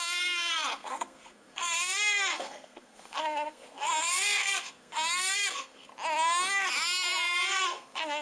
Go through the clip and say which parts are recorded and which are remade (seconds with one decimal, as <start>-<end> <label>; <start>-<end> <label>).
0.0-5.9 remade; 5.9-7.5 recorded; 7.5-8.2 remade